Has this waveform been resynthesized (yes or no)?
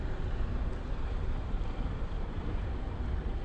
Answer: no